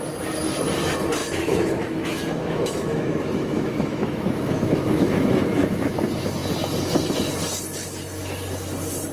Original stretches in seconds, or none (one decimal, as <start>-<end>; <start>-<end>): 0.0-1.2; 5.9-9.1